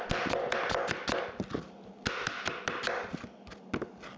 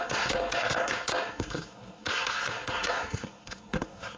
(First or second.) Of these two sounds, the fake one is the second